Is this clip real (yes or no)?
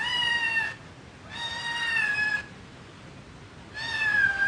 yes